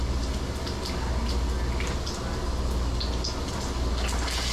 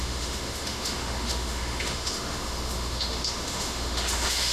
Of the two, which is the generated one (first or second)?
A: second